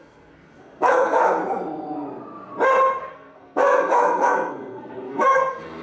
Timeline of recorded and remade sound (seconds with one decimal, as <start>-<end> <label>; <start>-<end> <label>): 0.0-1.4 remade; 1.4-3.1 recorded; 3.1-5.8 remade